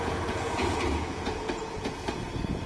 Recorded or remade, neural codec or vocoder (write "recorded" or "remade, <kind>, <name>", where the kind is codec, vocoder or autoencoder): remade, vocoder, Vocos